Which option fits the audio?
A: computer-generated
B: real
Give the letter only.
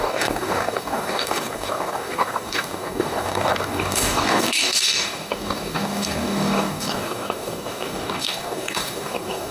A